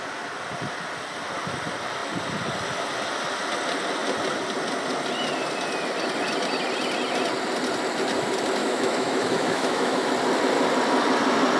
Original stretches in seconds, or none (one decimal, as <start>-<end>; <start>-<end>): 0.0-8.6; 10.1-11.6